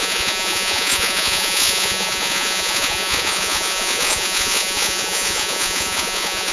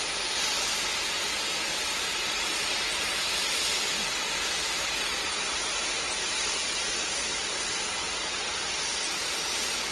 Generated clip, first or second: first